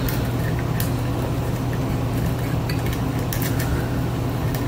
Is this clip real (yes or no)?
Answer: yes